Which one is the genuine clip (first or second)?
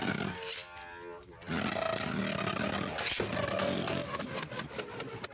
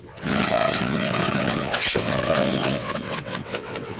first